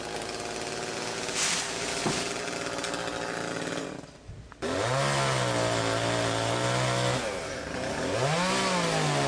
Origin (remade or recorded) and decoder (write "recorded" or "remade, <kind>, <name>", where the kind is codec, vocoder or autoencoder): recorded